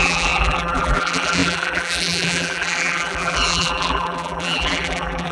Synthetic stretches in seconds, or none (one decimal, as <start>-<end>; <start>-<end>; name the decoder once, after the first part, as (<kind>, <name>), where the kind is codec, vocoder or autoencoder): 0.0-5.3 (vocoder, BigVGAN v2)